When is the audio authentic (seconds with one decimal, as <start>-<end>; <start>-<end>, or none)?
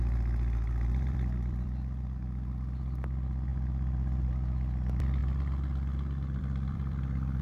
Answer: 5.2-6.4